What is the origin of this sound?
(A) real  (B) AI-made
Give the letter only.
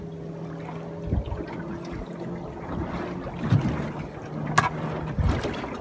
A